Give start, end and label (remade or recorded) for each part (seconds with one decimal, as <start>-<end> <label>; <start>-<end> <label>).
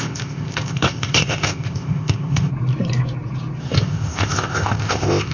0.0-2.5 remade; 2.5-3.6 recorded; 3.6-5.3 remade